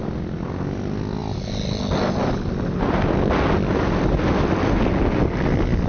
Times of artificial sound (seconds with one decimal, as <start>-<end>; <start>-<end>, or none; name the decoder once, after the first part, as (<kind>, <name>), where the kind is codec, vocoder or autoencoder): none